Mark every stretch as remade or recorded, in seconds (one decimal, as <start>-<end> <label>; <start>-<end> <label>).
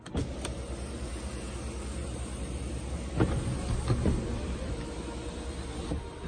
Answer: 0.0-6.3 recorded